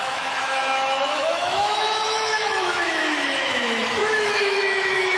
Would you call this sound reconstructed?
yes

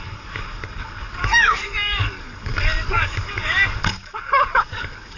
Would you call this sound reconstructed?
yes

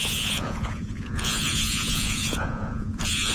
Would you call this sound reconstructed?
yes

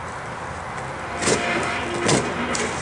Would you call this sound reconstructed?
no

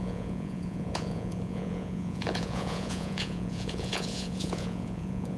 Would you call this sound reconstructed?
yes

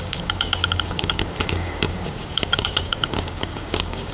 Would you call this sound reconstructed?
yes